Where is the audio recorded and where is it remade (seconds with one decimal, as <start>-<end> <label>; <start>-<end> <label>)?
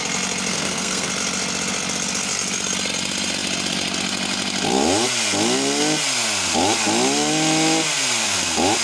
0.0-0.5 recorded; 0.5-1.1 remade; 1.1-8.8 recorded